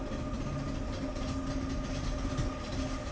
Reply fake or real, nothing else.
real